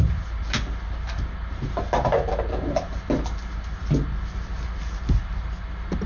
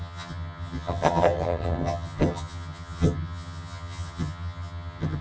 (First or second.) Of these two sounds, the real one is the first